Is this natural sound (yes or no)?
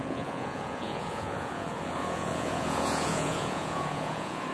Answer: no